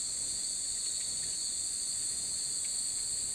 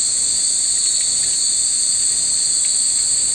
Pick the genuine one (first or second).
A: second